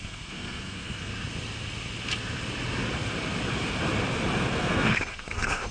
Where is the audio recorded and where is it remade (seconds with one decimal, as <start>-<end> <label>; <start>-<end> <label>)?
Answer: 0.0-1.1 remade; 1.1-4.5 recorded; 4.5-5.7 remade